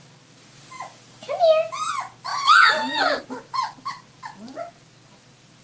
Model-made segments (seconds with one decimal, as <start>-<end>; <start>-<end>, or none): 2.3-3.2